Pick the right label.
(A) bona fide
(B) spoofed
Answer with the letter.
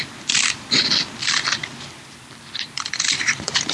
B